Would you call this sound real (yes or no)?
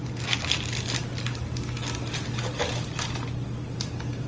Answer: yes